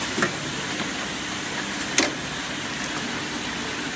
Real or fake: real